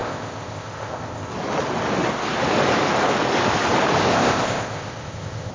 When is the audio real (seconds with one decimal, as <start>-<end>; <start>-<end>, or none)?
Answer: 1.3-4.1